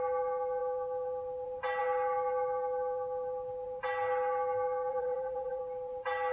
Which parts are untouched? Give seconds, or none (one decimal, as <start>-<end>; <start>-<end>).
0.0-4.9; 5.6-6.3